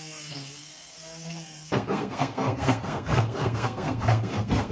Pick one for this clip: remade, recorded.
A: remade